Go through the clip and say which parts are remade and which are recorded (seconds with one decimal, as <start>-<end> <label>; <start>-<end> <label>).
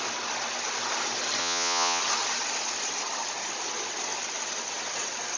0.0-1.4 recorded; 1.4-2.0 remade; 2.0-5.4 recorded